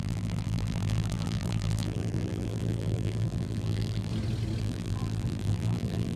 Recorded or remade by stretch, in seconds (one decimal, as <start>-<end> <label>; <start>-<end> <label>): 0.0-4.1 remade; 4.1-4.6 recorded; 4.6-6.2 remade